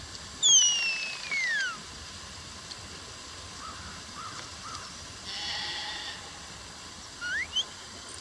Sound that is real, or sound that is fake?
real